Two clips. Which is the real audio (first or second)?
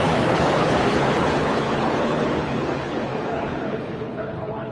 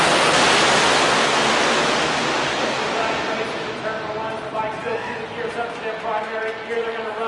second